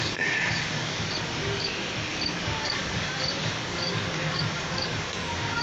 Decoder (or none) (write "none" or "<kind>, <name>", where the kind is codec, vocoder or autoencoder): codec, DAC